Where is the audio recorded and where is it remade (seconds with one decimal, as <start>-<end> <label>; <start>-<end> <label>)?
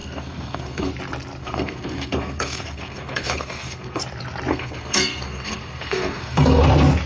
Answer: 0.0-0.9 remade; 0.9-1.4 recorded; 1.4-4.0 remade; 4.0-4.5 recorded; 4.5-6.6 remade; 6.6-7.1 recorded